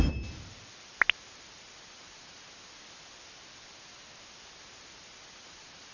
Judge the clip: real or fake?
real